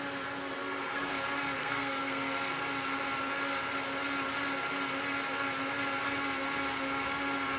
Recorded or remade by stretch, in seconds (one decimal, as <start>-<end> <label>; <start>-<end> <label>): 0.0-0.6 recorded; 0.6-1.1 remade; 1.1-1.6 recorded; 1.6-2.6 remade; 2.6-7.6 recorded